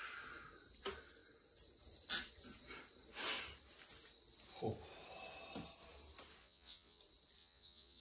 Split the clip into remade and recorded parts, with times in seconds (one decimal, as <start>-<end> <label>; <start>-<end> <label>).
0.0-6.4 recorded; 6.4-7.0 remade; 7.0-7.4 recorded; 7.4-8.0 remade